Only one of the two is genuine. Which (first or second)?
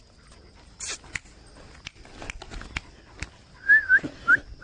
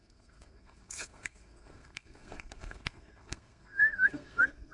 first